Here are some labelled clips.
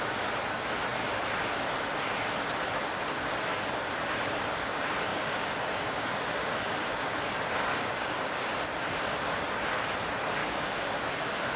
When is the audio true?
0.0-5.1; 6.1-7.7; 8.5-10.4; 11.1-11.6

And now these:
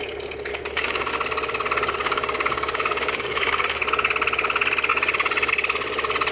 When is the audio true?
0.0-0.5; 1.1-2.0; 3.8-6.3

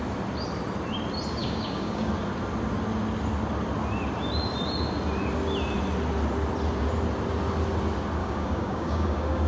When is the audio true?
0.0-1.4; 2.1-8.2

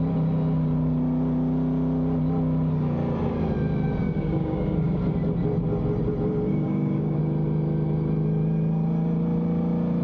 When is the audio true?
0.0-4.0; 5.0-6.5; 7.2-10.0